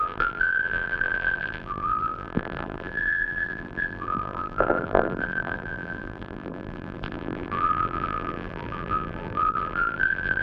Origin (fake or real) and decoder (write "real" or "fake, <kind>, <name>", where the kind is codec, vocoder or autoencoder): fake, vocoder, BigVGAN v2